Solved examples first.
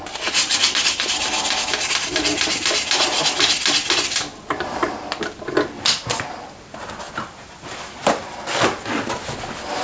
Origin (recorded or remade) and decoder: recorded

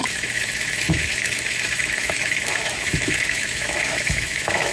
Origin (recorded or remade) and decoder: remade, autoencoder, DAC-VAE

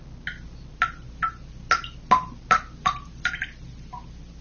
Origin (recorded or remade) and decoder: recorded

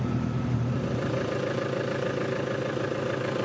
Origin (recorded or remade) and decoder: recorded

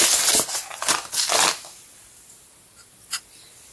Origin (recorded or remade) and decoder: recorded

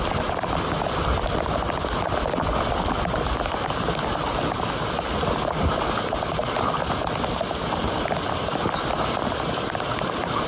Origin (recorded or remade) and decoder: remade, vocoder, BigVGAN v2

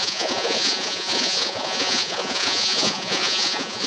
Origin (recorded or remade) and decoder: remade, vocoder, Vocos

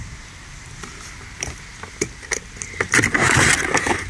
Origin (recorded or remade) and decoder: recorded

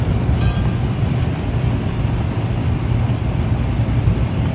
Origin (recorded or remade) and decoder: remade, vocoder, BigVGAN v2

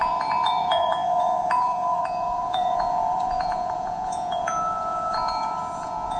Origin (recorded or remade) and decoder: remade, vocoder, Vocos